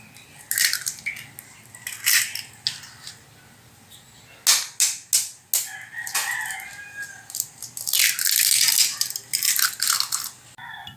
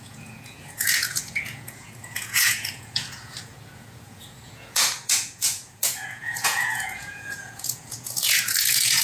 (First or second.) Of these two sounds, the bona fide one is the first